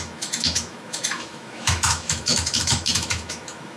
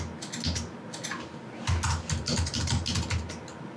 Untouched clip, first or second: second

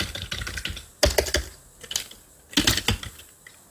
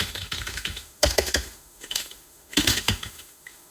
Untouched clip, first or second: first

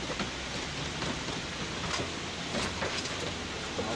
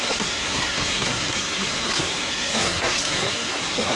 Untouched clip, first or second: first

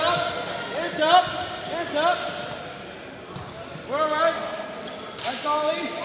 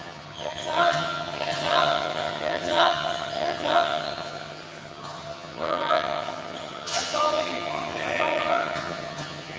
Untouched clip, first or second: first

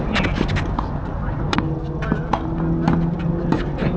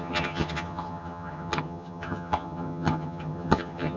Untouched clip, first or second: first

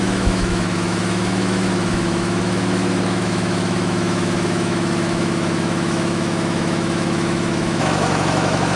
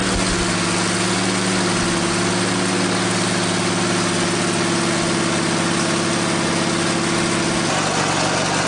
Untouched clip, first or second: second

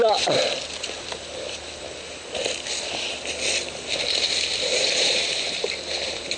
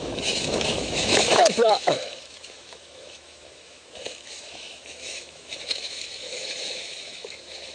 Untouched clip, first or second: first